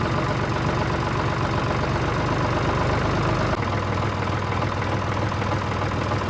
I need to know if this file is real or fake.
real